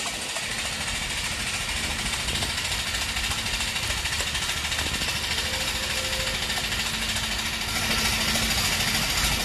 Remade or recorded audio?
recorded